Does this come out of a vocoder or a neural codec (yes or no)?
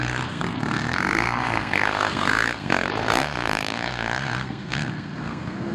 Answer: yes